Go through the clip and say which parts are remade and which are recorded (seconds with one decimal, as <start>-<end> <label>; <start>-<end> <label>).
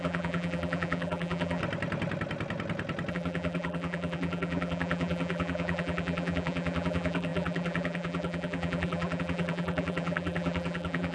0.0-1.6 remade; 1.6-3.1 recorded; 3.1-11.1 remade